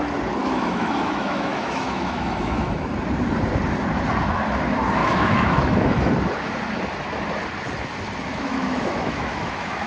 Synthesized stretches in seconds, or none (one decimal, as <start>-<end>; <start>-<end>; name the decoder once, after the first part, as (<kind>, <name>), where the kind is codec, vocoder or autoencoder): 0.4-2.9 (autoencoder, DAC-VAE); 5.0-6.1; 8.3-9.9